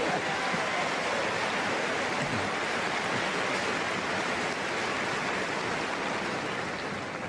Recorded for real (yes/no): yes